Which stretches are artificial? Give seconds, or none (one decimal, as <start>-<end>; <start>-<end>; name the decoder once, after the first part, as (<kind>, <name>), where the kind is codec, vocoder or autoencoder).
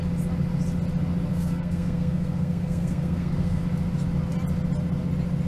1.3-3.6 (codec, SNAC)